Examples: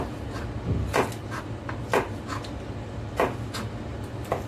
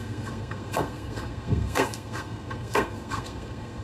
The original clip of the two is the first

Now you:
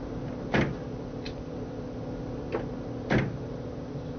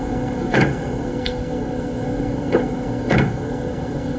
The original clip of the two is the first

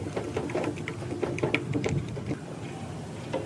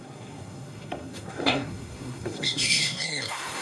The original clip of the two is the first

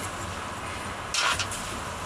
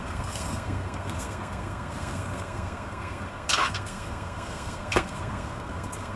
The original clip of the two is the first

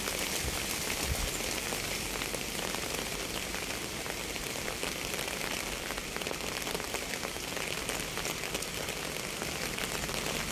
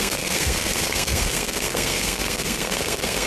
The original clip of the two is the first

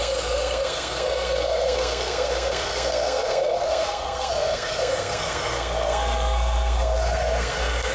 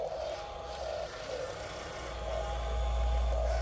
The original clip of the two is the second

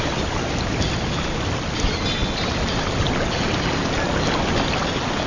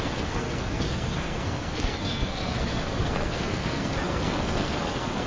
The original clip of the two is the first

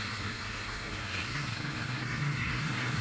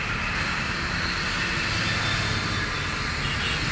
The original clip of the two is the second